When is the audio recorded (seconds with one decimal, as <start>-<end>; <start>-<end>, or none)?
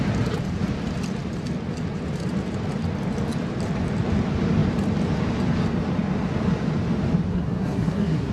0.0-7.3